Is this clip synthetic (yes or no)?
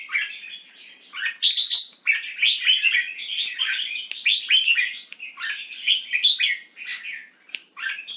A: no